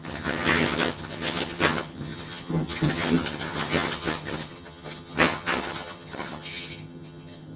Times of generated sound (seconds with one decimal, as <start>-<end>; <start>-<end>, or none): 0.0-7.6